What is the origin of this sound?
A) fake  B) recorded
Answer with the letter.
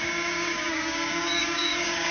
A